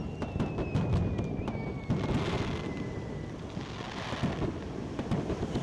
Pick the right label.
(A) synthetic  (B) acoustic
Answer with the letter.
B